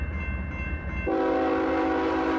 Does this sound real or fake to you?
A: real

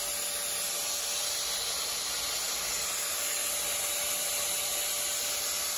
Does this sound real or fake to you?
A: real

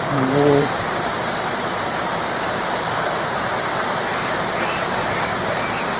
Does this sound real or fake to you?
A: fake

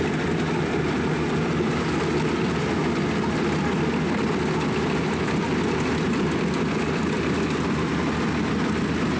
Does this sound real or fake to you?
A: real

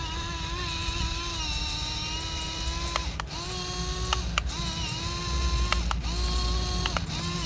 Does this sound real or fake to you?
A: real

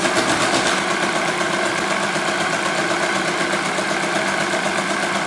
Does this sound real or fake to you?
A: fake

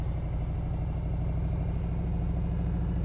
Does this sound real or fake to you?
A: real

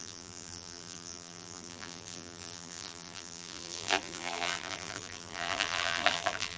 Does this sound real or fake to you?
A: fake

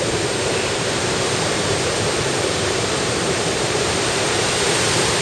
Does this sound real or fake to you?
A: fake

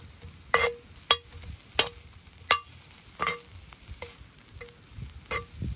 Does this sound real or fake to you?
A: real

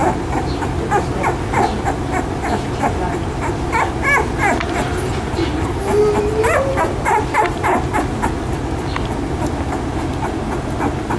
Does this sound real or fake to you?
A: real